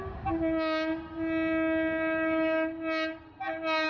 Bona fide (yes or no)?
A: yes